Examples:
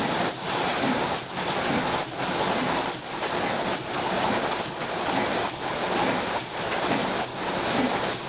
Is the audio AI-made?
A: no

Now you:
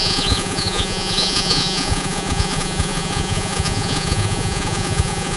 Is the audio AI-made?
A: yes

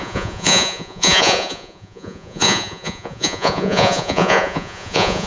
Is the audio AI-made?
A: yes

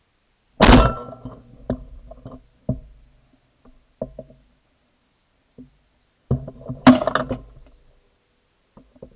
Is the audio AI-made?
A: no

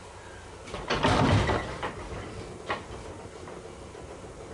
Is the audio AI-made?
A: no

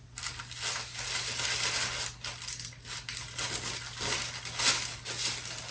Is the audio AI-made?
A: no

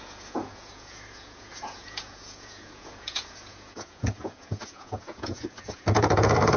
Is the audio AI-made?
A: yes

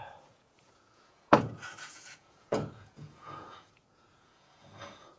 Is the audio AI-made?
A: yes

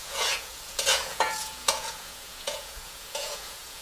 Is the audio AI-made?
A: yes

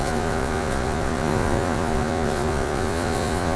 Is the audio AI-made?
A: yes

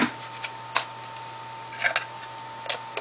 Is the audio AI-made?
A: no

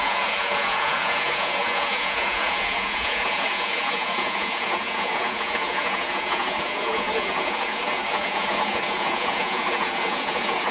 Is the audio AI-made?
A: yes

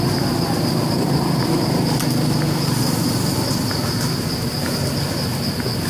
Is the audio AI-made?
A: no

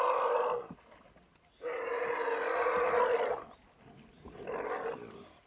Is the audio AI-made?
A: no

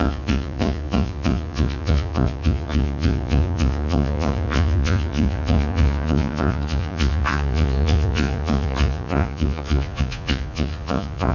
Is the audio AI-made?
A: yes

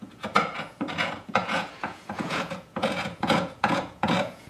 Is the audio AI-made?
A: yes